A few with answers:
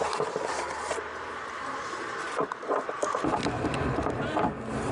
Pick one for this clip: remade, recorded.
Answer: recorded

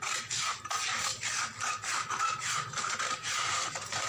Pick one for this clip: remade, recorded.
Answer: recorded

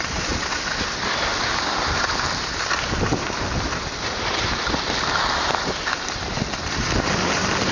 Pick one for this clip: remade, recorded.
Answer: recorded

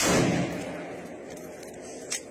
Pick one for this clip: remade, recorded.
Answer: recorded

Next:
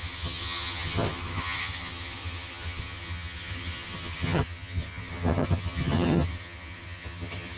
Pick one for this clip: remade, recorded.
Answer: remade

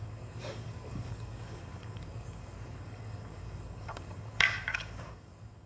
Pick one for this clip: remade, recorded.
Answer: remade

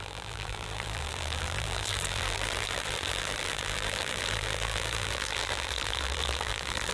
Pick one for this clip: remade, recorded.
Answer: remade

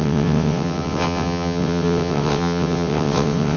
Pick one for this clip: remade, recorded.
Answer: remade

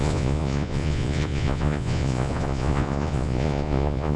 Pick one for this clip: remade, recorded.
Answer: remade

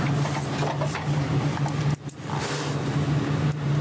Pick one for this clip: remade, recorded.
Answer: recorded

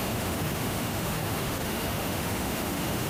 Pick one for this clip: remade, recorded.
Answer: remade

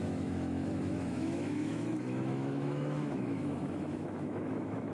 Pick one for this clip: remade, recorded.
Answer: remade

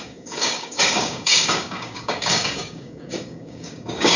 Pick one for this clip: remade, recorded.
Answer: remade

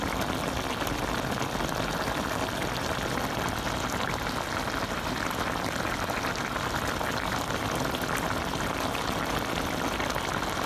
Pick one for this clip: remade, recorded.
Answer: recorded